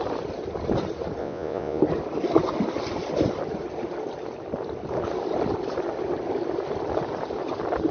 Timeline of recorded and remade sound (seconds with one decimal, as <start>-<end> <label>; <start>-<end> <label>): 0.0-1.2 recorded; 1.2-1.8 remade; 1.8-7.9 recorded